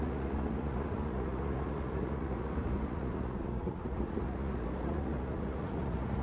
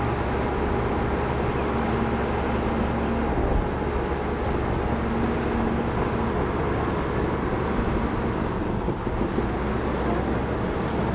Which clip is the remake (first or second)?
first